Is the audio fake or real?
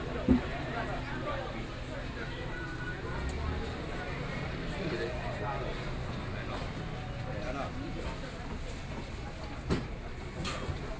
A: real